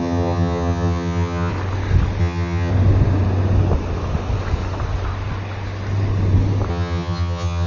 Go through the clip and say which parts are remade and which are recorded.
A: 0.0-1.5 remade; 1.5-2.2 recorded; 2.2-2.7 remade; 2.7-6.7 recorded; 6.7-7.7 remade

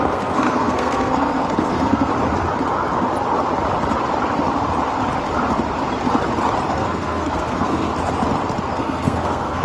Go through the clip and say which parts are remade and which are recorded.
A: 0.0-2.1 remade; 2.1-6.7 recorded; 6.7-7.9 remade; 7.9-8.7 recorded; 8.7-9.6 remade

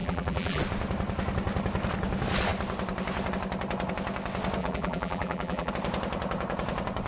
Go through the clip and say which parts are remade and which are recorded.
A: 0.0-0.6 remade; 0.6-4.6 recorded; 4.6-5.7 remade; 5.7-7.1 recorded

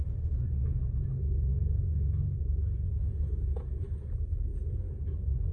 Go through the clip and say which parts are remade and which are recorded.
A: 0.0-4.5 remade; 4.5-5.5 recorded

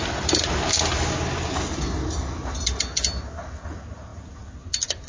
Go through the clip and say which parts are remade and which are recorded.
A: 0.0-5.1 recorded

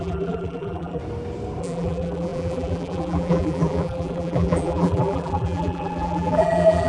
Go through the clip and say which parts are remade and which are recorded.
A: 0.0-1.0 remade; 1.0-1.6 recorded; 1.6-6.9 remade